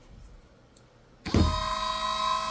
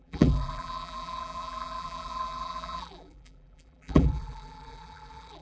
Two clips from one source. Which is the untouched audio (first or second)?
first